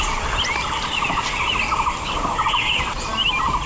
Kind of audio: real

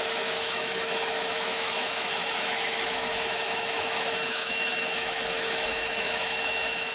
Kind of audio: fake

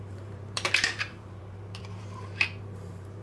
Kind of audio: fake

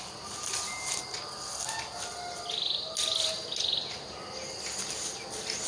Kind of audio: real